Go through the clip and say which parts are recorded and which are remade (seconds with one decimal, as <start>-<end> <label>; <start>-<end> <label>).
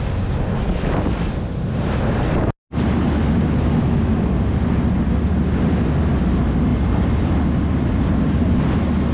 0.0-9.1 recorded